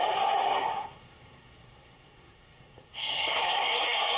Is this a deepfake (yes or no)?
yes